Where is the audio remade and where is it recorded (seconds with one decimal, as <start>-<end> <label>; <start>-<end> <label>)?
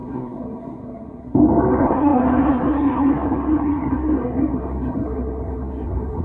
0.0-6.2 remade